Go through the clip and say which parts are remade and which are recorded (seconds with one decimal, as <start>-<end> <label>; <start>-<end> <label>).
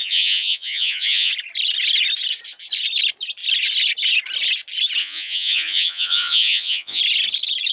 0.0-1.3 remade; 1.3-5.0 recorded; 5.0-7.0 remade; 7.0-7.7 recorded